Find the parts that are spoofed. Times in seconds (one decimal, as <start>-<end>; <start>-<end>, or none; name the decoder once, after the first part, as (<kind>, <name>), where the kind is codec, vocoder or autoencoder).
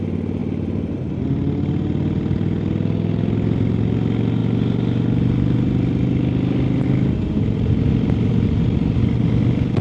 none